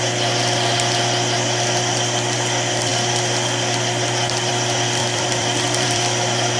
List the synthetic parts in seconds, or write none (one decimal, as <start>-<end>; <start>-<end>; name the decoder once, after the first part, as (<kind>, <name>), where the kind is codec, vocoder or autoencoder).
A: 5.0-6.6 (vocoder, BigVGAN v2)